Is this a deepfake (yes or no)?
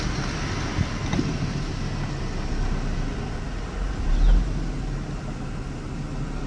no